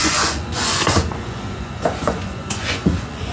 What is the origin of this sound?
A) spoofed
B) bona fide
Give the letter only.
A